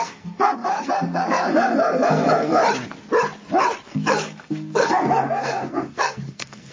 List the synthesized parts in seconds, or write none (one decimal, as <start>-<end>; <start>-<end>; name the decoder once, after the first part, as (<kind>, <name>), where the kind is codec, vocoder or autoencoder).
0.0-2.6 (codec, SNAC); 3.9-6.7